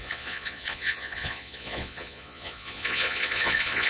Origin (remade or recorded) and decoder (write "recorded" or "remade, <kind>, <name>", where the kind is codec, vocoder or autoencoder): remade, vocoder, Vocos